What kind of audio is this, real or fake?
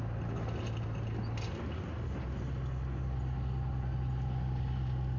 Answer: real